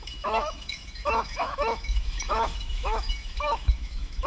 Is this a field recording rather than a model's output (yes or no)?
no